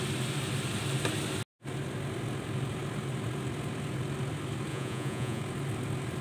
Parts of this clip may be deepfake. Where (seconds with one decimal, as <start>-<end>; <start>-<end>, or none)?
4.7-5.4